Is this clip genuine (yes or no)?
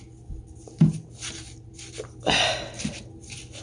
yes